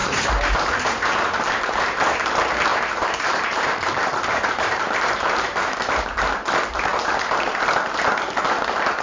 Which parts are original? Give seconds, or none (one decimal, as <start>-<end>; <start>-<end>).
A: 2.0-2.7; 6.4-6.9; 7.6-9.0